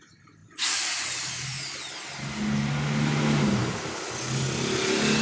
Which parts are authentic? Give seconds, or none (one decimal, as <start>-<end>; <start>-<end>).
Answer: 0.0-0.4; 1.8-5.2